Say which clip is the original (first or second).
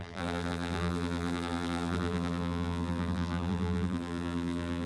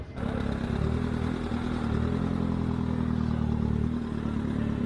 second